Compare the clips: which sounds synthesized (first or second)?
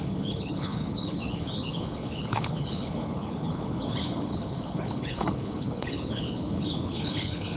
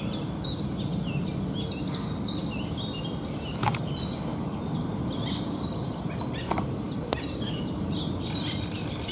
first